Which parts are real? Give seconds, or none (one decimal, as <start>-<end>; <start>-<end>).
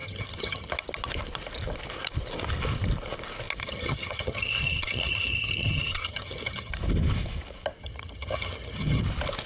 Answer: 0.7-3.6; 6.7-7.8; 9.0-9.5